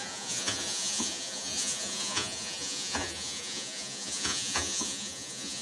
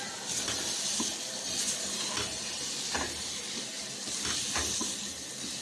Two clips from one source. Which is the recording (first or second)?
second